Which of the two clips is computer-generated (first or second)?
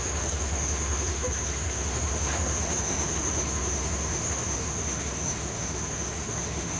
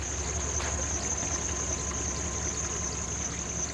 first